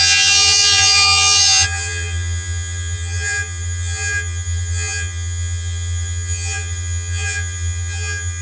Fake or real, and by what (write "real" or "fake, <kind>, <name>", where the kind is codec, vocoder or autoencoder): fake, vocoder, HiFi-GAN